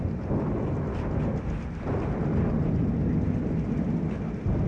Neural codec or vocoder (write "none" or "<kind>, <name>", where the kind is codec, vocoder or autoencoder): none